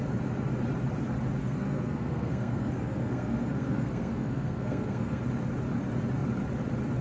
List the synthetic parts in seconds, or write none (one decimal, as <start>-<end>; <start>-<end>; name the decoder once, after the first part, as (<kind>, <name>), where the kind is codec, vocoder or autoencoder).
1.4-5.2 (codec, SNAC)